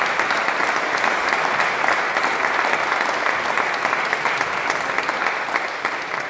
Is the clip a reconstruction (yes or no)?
no